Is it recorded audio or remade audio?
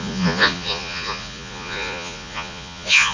remade